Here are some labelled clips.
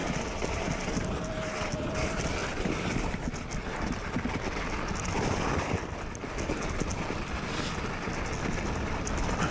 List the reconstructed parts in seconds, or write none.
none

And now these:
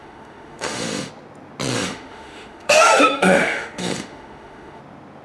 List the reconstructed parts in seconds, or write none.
0.0-1.1 (autoencoder, DAC-VAE); 1.7-4.8